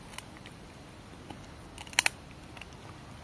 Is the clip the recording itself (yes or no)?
yes